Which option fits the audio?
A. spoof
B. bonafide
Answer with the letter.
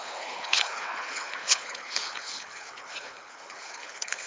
A